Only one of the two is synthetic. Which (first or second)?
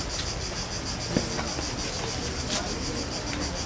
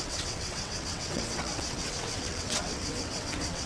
second